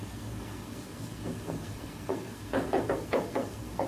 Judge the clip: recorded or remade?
remade